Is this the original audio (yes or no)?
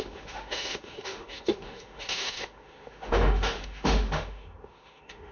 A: no